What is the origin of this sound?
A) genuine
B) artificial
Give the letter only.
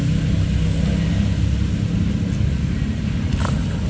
A